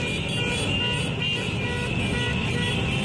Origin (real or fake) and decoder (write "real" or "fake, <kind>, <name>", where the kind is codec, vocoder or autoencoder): real